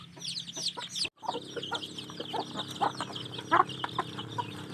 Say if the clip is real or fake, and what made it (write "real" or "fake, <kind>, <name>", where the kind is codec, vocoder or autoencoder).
real